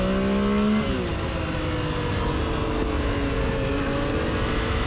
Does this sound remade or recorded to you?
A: recorded